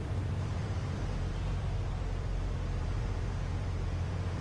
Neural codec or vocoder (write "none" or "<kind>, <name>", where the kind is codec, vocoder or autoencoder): vocoder, BigVGAN v2